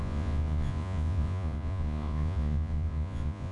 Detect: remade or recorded remade